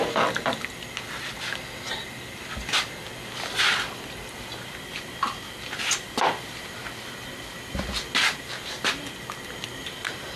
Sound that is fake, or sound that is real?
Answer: real